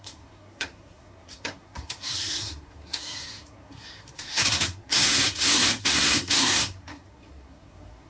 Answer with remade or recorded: remade